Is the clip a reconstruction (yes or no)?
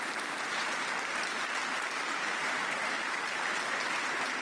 yes